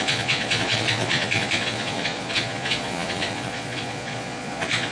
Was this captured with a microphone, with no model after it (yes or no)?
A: no